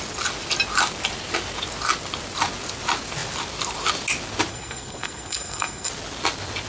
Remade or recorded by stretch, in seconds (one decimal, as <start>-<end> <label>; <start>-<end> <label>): 0.0-4.5 recorded; 4.5-5.9 remade; 5.9-6.7 recorded